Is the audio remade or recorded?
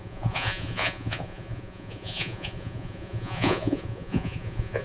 remade